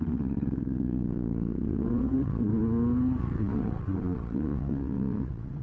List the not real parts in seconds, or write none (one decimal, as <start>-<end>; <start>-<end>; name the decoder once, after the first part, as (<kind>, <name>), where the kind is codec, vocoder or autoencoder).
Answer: 0.0-2.5 (vocoder, WaveNeXt); 3.2-5.6